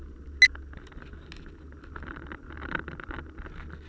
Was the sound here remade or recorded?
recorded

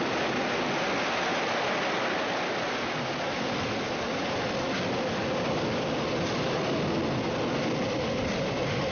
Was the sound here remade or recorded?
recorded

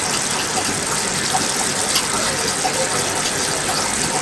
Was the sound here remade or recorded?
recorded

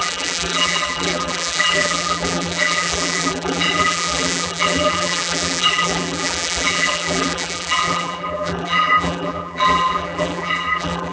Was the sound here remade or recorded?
remade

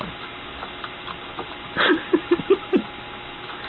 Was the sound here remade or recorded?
recorded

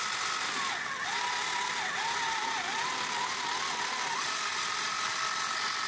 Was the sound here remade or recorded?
recorded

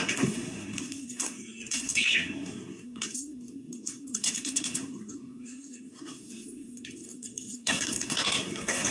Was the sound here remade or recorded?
remade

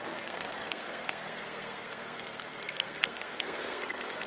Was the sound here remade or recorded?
remade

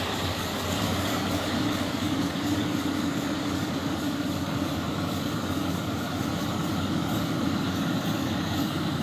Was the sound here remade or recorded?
remade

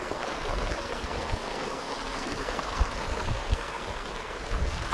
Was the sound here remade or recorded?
remade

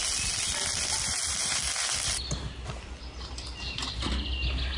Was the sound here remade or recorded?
recorded